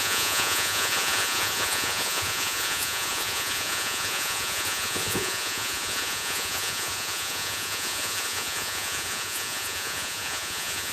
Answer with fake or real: fake